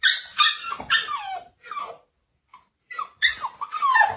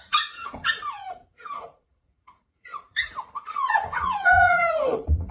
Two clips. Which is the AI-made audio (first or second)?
second